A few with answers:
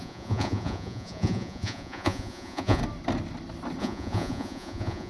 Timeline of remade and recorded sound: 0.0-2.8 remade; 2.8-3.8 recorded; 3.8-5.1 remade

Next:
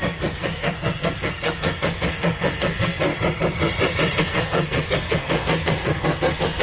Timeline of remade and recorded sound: 0.0-3.1 remade; 3.1-4.2 recorded; 4.2-6.6 remade

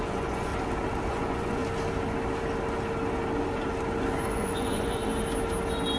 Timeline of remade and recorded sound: 0.0-0.5 remade; 0.5-1.1 recorded; 1.1-1.6 remade; 1.6-4.3 recorded; 4.3-5.0 remade; 5.0-6.0 recorded